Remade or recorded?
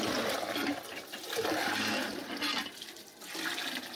recorded